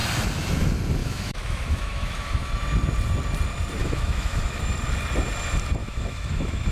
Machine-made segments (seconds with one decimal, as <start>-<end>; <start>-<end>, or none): 1.0-2.5; 3.8-4.6; 5.8-6.7